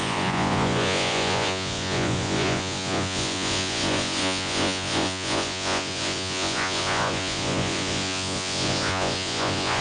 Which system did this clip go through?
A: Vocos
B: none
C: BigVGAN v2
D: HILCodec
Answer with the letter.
A